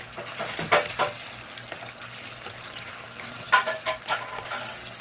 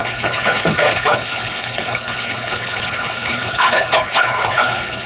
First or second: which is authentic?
first